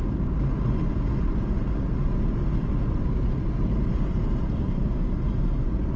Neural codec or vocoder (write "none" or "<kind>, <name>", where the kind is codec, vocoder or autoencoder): none